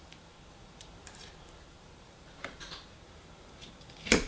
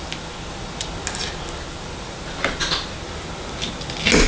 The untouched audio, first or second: second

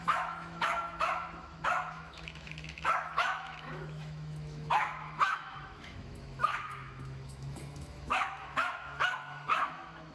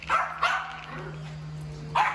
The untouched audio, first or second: second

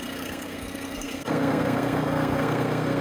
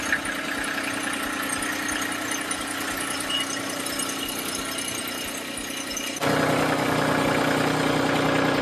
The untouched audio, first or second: second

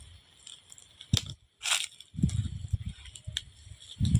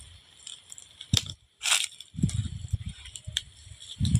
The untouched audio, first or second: first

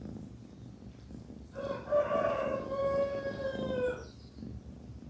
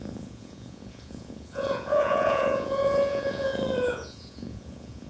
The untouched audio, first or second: first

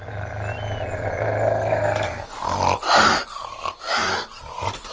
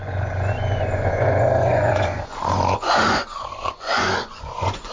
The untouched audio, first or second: first